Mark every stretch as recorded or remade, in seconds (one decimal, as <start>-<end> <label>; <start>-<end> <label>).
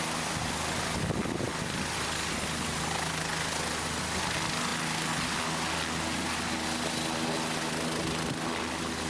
0.0-9.1 recorded